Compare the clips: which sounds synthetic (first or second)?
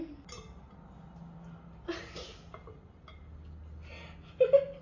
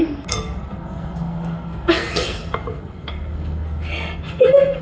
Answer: second